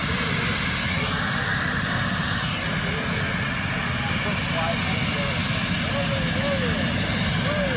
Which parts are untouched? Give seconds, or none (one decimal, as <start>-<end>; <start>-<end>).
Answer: 0.0-7.8